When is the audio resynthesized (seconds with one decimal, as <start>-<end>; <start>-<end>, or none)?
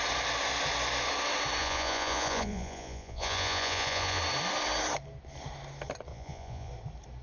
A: 1.6-4.2; 6.1-6.7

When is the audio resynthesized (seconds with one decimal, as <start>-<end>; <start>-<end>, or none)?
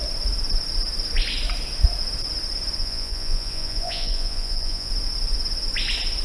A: 2.8-4.9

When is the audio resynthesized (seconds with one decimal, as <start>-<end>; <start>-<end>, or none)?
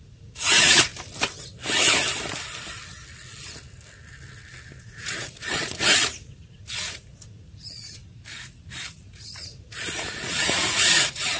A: 0.0-0.9; 4.8-8.0; 8.9-11.4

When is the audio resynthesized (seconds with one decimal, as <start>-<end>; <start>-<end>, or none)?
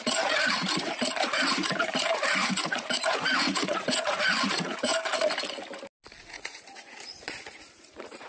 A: 0.0-4.9; 6.2-8.3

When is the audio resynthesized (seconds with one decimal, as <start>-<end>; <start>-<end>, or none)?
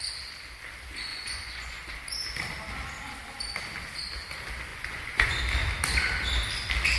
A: 1.1-1.9; 4.7-5.4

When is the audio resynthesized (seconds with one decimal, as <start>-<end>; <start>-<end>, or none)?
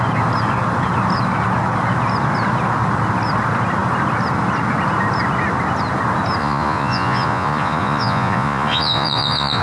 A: 6.4-9.6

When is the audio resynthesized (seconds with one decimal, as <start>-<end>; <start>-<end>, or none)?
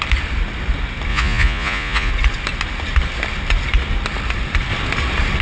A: 1.1-2.1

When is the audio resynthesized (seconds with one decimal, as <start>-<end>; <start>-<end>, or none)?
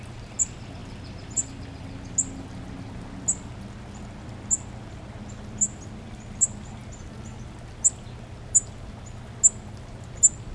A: none